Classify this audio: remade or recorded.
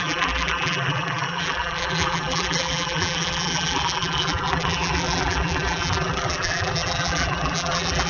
remade